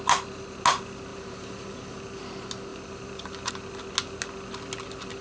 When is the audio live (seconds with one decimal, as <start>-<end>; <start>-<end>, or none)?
0.0-1.1; 2.2-2.7; 3.5-5.2